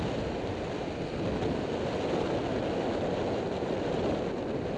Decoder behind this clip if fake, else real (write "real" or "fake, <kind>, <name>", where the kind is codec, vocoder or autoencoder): real